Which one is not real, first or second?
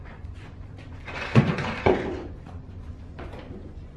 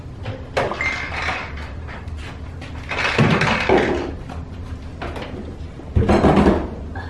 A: first